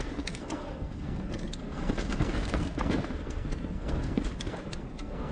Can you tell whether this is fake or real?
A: fake